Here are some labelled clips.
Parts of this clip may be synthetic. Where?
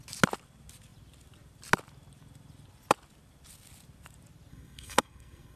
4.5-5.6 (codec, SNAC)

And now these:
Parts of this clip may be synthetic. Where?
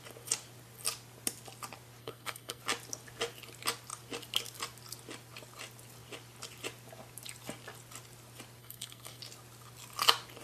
2.0-2.6 (codec, SNAC); 8.6-9.2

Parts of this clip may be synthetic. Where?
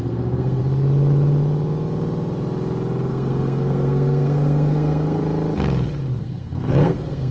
0.0-0.6 (codec, SNAC); 3.1-5.2; 6.2-7.3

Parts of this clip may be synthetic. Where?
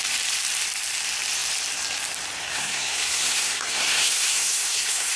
2.4-5.2 (codec, SNAC)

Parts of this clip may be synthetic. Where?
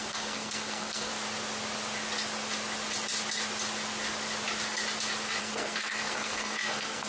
0.0-1.1 (codec, SNAC); 5.4-7.1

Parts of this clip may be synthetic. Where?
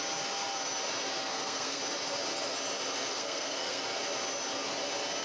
1.3-1.8 (codec, SNAC); 3.1-3.8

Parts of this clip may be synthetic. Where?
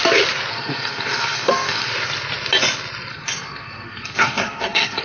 0.5-1.9 (codec, SNAC); 3.1-5.0